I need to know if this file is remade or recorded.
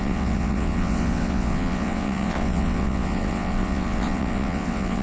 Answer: remade